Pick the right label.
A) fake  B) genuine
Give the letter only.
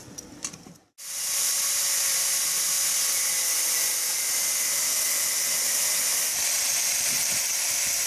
B